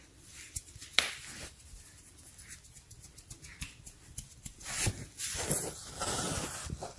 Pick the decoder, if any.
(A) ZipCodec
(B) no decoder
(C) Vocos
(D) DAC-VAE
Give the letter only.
B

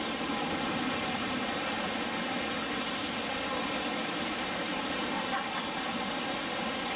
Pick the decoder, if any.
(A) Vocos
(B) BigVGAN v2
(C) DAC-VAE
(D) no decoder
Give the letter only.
D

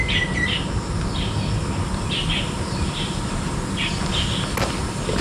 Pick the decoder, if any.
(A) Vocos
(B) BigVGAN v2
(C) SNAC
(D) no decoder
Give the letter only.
D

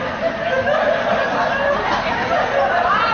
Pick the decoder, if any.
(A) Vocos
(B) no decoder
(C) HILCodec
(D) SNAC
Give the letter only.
B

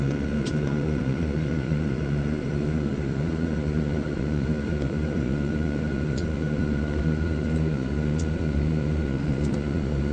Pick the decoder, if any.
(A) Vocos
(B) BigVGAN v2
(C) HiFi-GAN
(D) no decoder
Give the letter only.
A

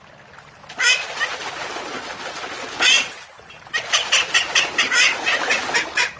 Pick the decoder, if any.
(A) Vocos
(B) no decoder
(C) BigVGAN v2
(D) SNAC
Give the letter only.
B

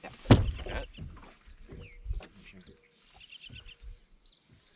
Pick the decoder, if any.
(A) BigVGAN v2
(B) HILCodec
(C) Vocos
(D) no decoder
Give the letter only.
D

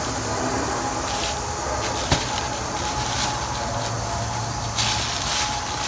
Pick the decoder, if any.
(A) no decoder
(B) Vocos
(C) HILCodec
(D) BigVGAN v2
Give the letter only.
A